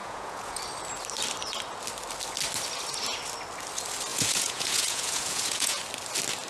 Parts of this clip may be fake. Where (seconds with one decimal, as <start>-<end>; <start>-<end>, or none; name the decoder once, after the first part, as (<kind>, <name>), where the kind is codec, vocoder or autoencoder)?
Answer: 0.0-0.6 (vocoder, Vocos); 4.1-5.8